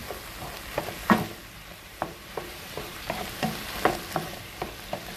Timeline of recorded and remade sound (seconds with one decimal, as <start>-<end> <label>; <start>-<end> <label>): 0.0-1.7 recorded; 1.7-3.0 remade; 3.0-5.2 recorded